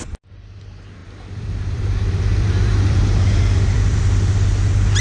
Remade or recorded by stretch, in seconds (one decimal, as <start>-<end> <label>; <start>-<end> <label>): 0.0-1.0 recorded; 1.0-4.0 remade; 4.0-5.0 recorded